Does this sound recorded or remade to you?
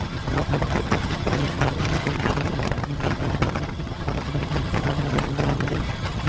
remade